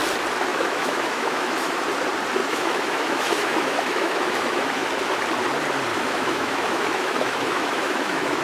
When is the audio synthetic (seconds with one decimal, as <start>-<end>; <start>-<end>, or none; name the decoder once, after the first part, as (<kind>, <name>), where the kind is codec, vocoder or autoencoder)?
0.5-1.8 (autoencoder, DAC-VAE); 2.4-4.9; 5.9-8.4